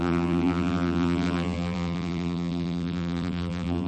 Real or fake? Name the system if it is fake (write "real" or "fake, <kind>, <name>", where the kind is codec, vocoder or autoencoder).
fake, vocoder, BigVGAN v2